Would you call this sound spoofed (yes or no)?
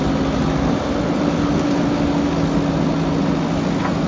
no